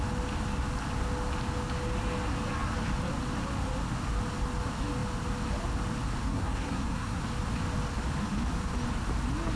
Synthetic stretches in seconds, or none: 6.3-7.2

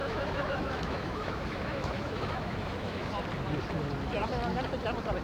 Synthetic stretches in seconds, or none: 0.0-3.1

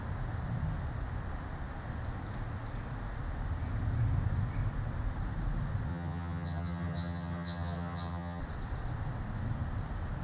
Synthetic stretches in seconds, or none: 5.9-8.4

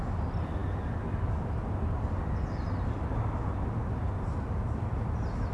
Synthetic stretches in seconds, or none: none

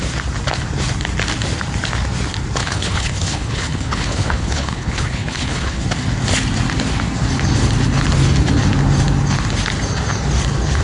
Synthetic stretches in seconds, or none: 2.6-5.8